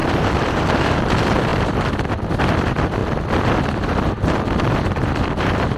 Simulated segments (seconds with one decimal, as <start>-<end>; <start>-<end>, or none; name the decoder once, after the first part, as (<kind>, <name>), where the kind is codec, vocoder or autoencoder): 0.0-1.5 (vocoder, BigVGAN v2); 2.4-5.8